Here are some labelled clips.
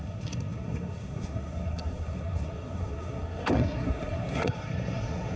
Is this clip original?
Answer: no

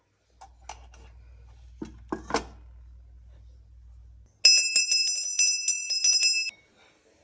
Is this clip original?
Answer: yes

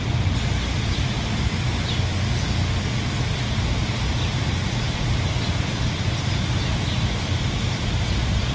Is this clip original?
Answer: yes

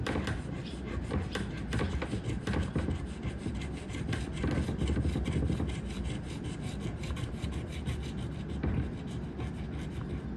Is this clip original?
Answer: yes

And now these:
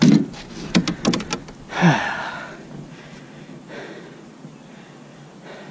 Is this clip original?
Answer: yes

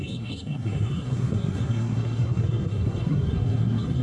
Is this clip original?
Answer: no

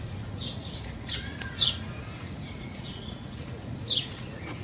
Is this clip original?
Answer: no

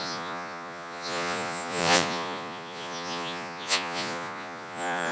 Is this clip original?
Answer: no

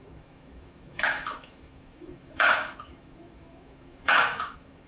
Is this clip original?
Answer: no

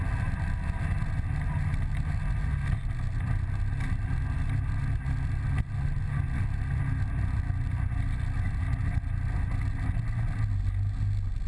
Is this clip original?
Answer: yes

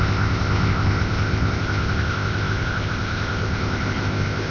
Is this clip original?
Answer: no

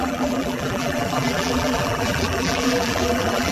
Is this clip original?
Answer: no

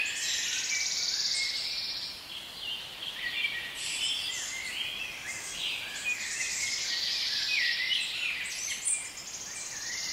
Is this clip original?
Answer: yes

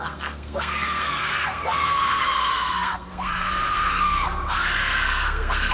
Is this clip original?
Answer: no